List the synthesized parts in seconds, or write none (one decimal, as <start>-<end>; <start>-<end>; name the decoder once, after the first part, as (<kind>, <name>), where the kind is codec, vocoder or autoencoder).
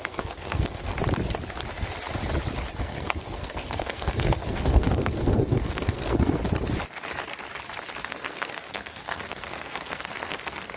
0.0-0.9 (codec, SNAC); 2.8-6.4; 8.0-10.8